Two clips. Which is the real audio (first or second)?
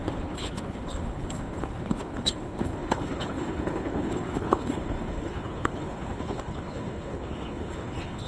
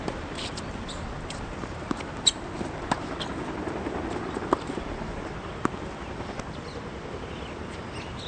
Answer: second